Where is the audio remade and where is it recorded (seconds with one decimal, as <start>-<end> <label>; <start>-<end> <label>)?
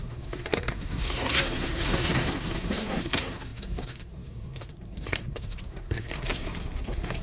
0.0-7.2 remade